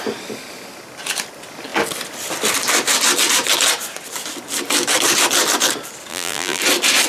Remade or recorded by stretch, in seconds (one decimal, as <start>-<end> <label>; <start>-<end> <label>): 0.0-6.1 recorded; 6.1-6.6 remade; 6.6-7.1 recorded